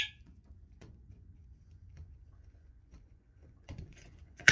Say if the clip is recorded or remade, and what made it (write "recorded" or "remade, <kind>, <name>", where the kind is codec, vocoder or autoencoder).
remade, vocoder, Vocos